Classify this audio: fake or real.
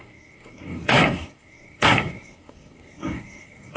fake